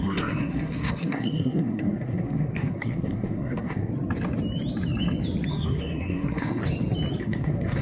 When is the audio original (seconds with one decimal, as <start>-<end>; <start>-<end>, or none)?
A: 3.9-5.5; 6.6-7.2